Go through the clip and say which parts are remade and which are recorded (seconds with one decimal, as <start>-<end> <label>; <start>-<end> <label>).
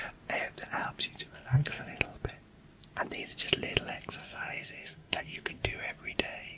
0.0-1.3 recorded; 1.3-1.9 remade; 1.9-4.2 recorded; 4.2-5.6 remade; 5.6-6.6 recorded